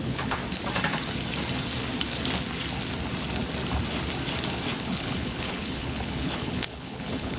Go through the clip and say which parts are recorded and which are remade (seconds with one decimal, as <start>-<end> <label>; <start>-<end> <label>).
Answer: 0.0-0.4 remade; 0.4-4.8 recorded; 4.8-7.4 remade